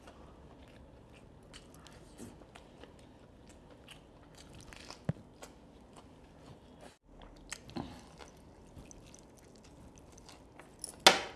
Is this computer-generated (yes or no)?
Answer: no